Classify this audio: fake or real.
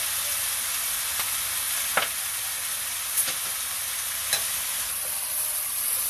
real